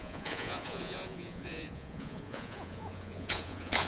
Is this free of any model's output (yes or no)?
no